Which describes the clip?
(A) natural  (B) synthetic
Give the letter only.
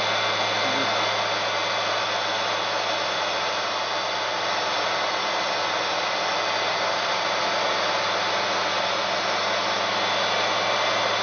A